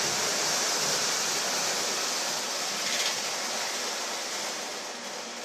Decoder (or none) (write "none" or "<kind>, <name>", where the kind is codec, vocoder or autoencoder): none